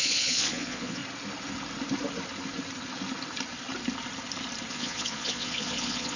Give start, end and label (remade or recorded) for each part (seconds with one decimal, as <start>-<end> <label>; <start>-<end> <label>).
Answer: 0.0-1.0 remade; 1.0-4.7 recorded; 4.7-6.2 remade